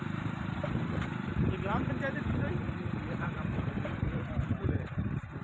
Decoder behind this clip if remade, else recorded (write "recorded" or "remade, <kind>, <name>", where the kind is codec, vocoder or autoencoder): remade, vocoder, BigVGAN v2